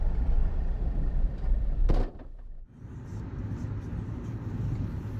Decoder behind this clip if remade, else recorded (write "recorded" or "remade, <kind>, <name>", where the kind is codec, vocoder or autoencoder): recorded